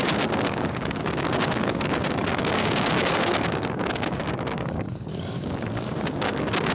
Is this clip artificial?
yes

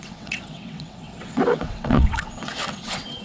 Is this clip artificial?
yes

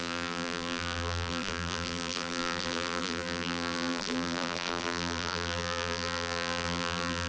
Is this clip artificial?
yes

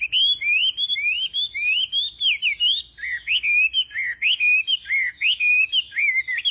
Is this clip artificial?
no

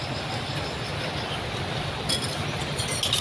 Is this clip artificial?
no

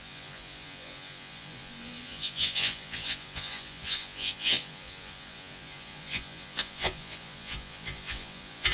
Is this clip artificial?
yes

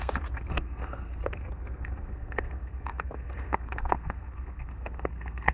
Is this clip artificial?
yes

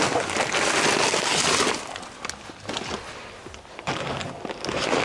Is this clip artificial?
no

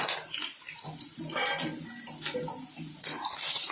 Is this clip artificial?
no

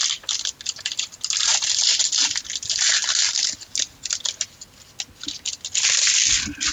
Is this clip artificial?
no